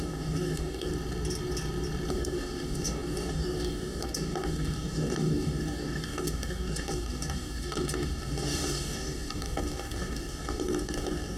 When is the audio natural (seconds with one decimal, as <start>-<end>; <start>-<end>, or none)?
0.9-2.1